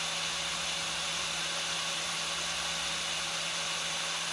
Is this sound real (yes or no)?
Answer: yes